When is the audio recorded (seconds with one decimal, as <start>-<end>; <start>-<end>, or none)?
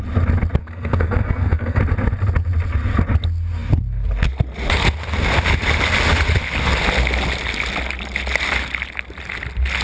0.0-0.6; 1.8-9.8